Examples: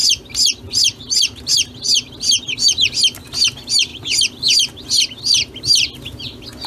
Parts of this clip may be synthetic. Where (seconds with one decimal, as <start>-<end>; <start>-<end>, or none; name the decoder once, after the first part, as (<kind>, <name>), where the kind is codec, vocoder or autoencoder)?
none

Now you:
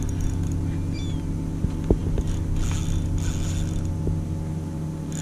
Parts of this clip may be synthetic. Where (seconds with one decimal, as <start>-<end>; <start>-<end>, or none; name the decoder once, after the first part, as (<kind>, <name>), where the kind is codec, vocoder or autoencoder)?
none

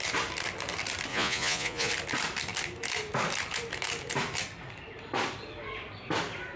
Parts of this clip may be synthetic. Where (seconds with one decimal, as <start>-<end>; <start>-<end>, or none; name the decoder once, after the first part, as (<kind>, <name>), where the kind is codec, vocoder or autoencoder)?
1.1-1.9 (vocoder, Vocos)

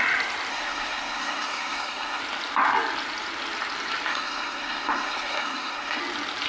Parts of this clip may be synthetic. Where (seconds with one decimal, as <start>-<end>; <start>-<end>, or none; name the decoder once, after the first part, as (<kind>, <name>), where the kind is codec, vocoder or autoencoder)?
0.5-2.2 (codec, SNAC); 4.1-6.0

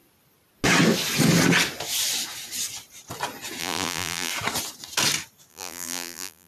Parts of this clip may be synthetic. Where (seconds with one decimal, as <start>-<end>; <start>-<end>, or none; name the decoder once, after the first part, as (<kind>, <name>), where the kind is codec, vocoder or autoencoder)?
3.6-4.3 (vocoder, BigVGAN v2); 5.5-6.5